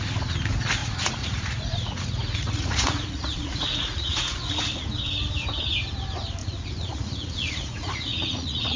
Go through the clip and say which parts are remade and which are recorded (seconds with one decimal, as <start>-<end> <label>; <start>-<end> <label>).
0.0-0.8 recorded; 0.8-4.9 remade; 4.9-6.4 recorded; 6.4-8.8 remade